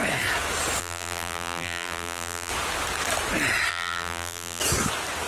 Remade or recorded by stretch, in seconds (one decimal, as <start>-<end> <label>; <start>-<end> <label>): 0.0-0.8 recorded; 0.8-2.5 remade; 2.5-3.7 recorded; 3.7-4.6 remade; 4.6-5.3 recorded